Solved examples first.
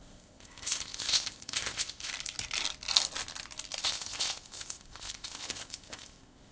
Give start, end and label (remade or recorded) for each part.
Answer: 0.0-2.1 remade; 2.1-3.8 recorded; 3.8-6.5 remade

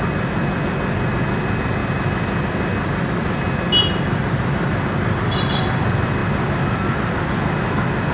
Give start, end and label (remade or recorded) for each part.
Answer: 0.0-8.1 recorded

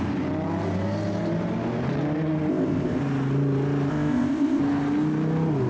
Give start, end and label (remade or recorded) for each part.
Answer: 0.0-2.5 recorded; 2.5-3.0 remade; 3.0-3.9 recorded; 3.9-4.6 remade; 4.6-5.7 recorded

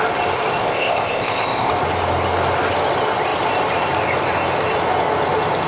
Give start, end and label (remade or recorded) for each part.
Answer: 0.0-0.6 recorded; 0.6-1.7 remade; 1.7-5.7 recorded

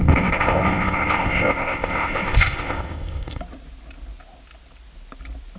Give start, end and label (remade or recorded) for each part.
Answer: 0.0-3.4 remade; 3.4-5.6 recorded

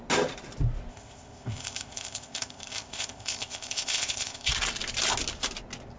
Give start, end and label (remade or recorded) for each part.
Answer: 0.0-0.9 recorded; 0.9-4.5 remade; 4.5-6.0 recorded

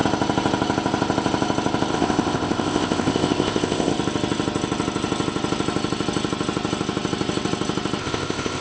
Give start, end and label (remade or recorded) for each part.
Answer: 0.0-1.9 recorded; 1.9-3.9 remade; 3.9-8.0 recorded; 8.0-8.6 remade

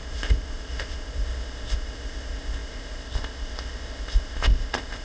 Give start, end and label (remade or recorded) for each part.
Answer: 0.0-5.0 remade